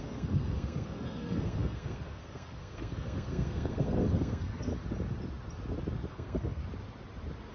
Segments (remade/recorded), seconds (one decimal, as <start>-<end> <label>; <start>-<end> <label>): 0.0-4.7 remade; 4.7-6.1 recorded; 6.1-6.6 remade; 6.6-7.5 recorded